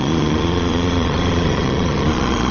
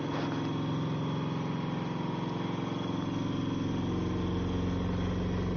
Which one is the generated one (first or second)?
first